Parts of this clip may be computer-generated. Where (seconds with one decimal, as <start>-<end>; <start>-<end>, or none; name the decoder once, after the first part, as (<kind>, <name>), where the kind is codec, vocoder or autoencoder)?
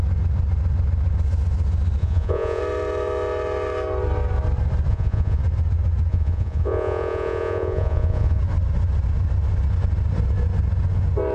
2.0-2.6 (vocoder, Vocos); 4.9-5.4; 6.1-8.4